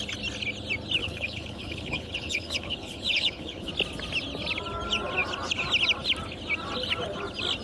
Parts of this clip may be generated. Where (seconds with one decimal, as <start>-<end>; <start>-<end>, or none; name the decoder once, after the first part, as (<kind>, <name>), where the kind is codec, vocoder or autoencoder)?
1.0-3.7 (codec, HILCodec)